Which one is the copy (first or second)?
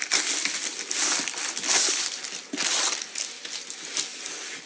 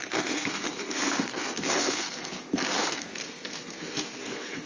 second